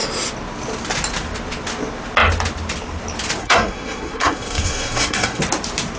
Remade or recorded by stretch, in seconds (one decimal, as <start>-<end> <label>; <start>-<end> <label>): 0.0-3.4 recorded; 3.4-5.4 remade; 5.4-6.0 recorded